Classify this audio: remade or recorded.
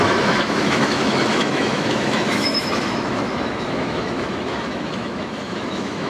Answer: remade